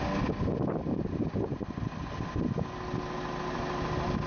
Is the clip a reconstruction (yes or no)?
no